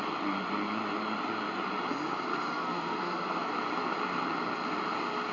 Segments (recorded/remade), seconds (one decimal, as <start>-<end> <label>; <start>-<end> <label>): 0.0-2.3 recorded; 2.3-3.5 remade; 3.5-5.3 recorded